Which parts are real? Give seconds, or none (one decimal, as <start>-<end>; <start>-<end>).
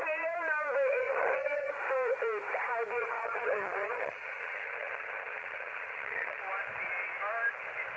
0.0-1.0; 1.7-3.0; 6.4-8.0